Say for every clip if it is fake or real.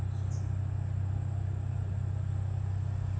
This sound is real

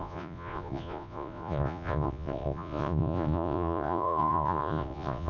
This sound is fake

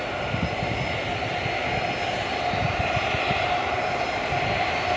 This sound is real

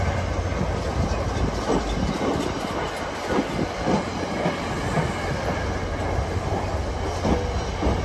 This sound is real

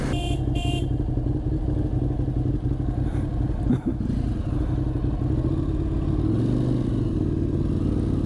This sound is real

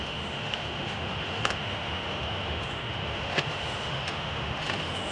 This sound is fake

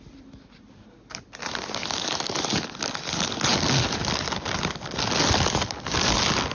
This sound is real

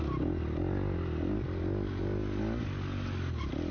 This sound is real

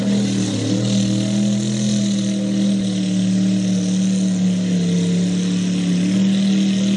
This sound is real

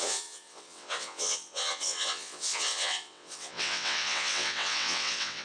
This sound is fake